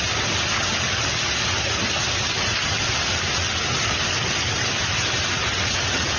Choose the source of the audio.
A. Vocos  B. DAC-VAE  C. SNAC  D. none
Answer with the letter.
D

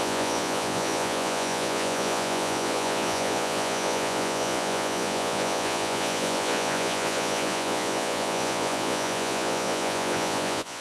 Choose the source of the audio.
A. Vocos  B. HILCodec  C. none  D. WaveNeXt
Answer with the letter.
A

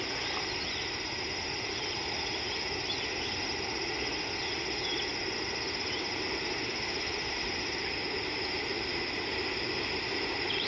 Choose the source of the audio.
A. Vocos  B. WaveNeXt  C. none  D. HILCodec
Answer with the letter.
C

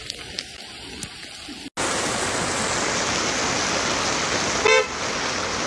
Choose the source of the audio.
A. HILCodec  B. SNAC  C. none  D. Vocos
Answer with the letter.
C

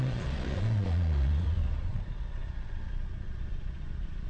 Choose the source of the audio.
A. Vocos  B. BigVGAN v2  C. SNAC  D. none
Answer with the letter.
A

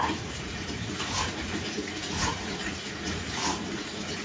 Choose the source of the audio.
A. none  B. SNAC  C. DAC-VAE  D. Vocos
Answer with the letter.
D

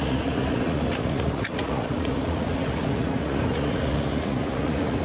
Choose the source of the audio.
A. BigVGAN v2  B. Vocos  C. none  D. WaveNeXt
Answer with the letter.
B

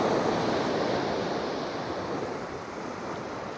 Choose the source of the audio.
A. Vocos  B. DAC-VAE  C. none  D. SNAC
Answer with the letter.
C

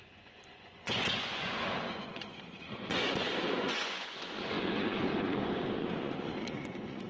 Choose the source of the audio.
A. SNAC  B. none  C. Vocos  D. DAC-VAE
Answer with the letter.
C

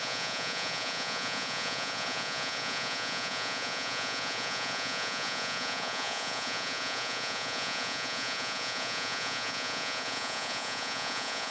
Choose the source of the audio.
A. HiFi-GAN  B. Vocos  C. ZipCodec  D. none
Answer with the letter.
B